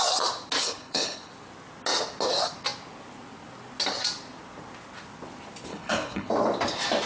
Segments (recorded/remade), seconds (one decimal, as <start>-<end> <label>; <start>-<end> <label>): 0.0-0.6 recorded; 0.6-1.3 remade; 1.3-5.7 recorded; 5.7-6.3 remade; 6.3-7.1 recorded

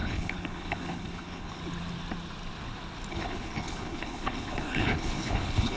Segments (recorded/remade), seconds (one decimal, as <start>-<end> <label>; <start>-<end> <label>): 0.0-1.6 remade; 1.6-3.1 recorded; 3.1-5.8 remade

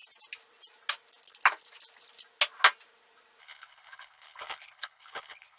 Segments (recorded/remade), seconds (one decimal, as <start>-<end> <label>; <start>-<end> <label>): 0.0-3.4 recorded; 3.4-5.6 remade

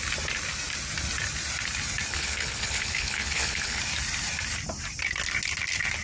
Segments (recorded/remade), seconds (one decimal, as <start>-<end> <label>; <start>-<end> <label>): 0.0-2.1 recorded; 2.1-3.8 remade; 3.8-6.0 recorded

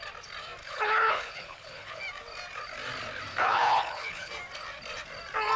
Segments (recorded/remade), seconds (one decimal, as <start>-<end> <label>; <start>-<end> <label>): 0.0-0.6 recorded; 0.6-2.0 remade; 2.0-3.3 recorded; 3.3-4.3 remade; 4.3-5.6 recorded

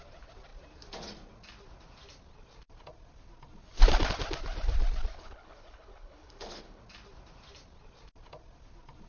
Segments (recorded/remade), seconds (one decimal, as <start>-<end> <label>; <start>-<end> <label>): 0.0-5.1 recorded; 5.1-6.8 remade; 6.8-9.1 recorded